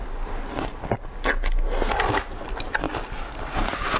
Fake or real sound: real